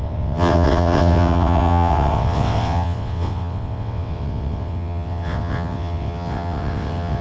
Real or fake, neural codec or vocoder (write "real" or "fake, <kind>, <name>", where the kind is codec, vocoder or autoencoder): fake, vocoder, WaveNeXt